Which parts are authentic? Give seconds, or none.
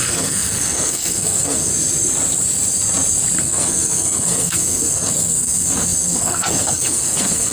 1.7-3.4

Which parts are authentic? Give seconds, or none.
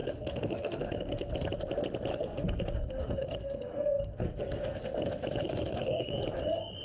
1.3-2.1; 4.8-5.4; 6.2-6.8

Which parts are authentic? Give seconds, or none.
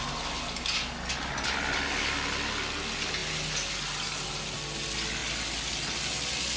0.0-6.6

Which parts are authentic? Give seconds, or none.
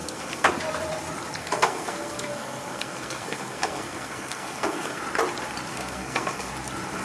0.5-1.4; 5.0-5.7; 6.5-7.0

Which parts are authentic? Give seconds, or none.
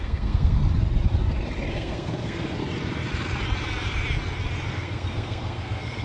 0.6-1.7; 2.6-4.7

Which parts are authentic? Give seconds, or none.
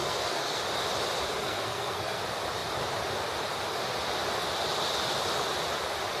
0.6-1.4; 2.2-6.2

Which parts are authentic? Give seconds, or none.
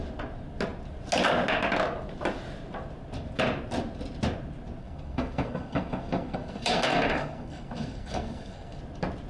0.0-4.8; 8.8-9.3